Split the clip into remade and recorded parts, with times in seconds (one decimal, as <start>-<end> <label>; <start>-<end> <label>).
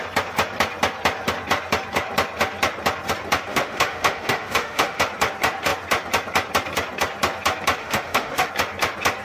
0.0-3.5 recorded; 3.5-5.0 remade; 5.0-7.8 recorded; 7.8-8.5 remade; 8.5-9.2 recorded